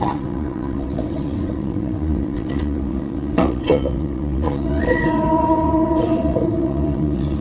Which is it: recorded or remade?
remade